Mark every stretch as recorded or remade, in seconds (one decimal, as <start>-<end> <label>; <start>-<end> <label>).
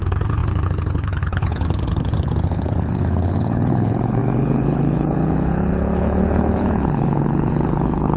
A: 0.0-8.2 remade